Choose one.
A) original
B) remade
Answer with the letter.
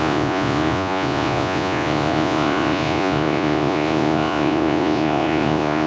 B